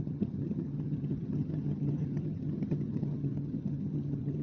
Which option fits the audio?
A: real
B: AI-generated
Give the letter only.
B